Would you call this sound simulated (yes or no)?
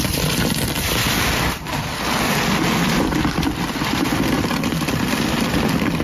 yes